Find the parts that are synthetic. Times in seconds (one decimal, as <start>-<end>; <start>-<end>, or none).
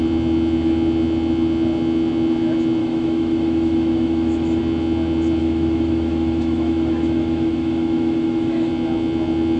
2.8-4.6; 5.4-8.7